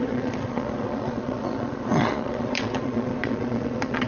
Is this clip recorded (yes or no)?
no